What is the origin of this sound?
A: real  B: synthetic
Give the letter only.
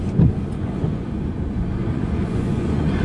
B